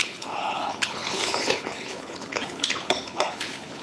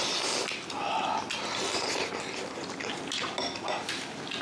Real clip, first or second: second